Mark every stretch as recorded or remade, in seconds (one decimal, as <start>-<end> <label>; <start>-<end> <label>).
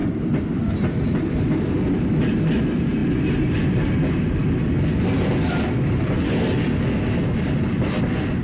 0.0-8.4 recorded